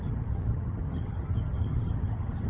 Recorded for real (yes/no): no